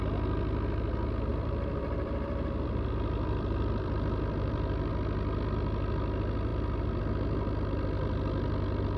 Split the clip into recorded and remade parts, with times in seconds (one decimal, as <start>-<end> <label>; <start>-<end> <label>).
0.0-1.3 recorded; 1.3-4.9 remade; 4.9-9.0 recorded